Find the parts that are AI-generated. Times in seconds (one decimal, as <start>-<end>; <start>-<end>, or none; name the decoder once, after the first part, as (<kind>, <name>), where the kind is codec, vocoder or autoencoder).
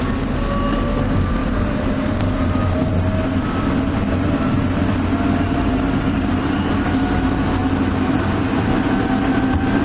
1.4-2.9 (vocoder, BigVGAN v2)